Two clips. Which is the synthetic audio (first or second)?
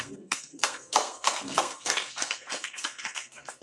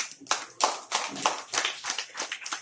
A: first